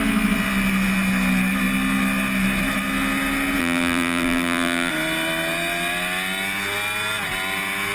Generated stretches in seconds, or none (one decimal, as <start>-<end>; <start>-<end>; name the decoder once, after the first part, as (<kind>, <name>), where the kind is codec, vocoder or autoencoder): 3.6-4.9 (vocoder, BigVGAN v2)